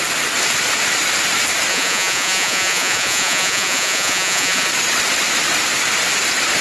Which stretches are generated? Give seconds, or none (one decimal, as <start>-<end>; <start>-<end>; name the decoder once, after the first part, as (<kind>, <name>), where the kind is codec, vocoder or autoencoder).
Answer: 1.7-4.7 (vocoder, Vocos)